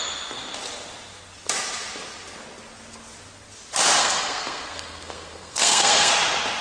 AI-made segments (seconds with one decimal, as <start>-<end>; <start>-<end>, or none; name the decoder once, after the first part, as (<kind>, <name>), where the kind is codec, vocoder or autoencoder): 4.0-6.1 (codec, SNAC)